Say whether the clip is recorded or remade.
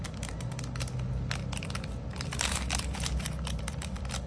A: recorded